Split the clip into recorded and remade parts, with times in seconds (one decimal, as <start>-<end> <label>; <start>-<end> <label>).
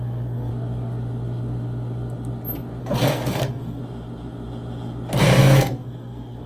0.0-0.5 remade; 0.5-2.8 recorded; 2.8-3.8 remade; 3.8-5.4 recorded; 5.4-6.5 remade